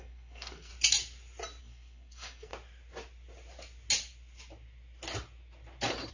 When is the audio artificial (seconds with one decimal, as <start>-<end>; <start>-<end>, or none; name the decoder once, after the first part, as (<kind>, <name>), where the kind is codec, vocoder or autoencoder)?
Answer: 0.0-0.7 (codec, SNAC); 1.6-2.5